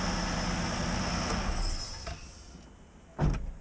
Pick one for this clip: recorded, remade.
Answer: recorded